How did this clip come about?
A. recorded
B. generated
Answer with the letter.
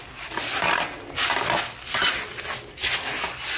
A